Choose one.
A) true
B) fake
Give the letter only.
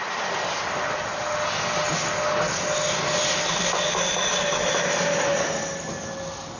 A